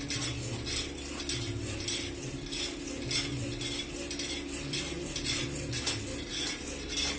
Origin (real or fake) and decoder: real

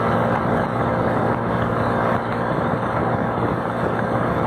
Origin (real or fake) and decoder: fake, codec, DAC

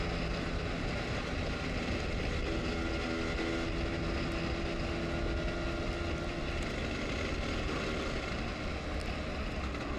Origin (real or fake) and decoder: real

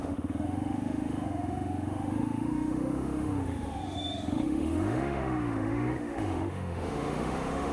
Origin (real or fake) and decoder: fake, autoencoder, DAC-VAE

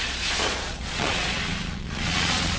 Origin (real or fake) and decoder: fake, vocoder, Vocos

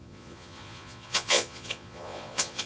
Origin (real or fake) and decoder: fake, vocoder, Vocos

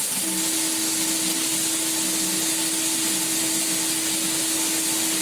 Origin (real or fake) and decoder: real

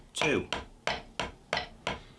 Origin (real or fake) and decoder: real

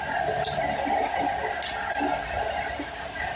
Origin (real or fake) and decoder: real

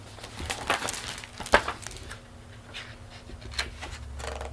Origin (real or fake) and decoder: real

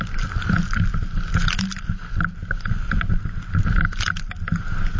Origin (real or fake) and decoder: real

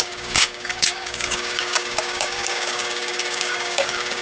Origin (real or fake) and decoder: fake, codec, DAC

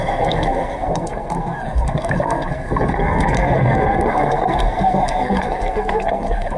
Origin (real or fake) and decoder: fake, codec, SNAC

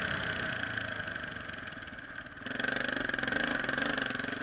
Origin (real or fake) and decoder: real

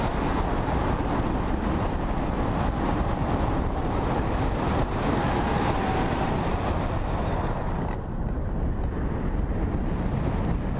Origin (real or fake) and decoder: real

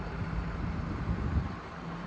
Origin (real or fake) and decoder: fake, vocoder, BigVGAN v2